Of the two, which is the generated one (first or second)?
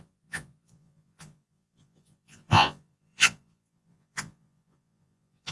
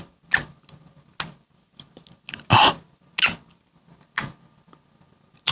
first